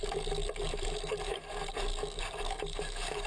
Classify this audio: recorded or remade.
remade